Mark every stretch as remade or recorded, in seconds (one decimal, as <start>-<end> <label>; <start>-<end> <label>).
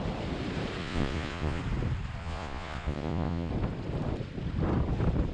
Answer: 0.0-0.8 recorded; 0.8-1.6 remade; 1.6-2.2 recorded; 2.2-3.5 remade; 3.5-5.3 recorded